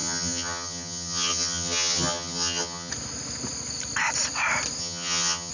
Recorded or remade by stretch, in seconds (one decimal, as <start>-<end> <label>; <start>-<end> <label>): 0.0-2.9 remade; 2.9-4.8 recorded; 4.8-5.5 remade